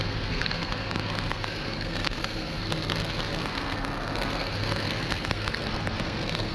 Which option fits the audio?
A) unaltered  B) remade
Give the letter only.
B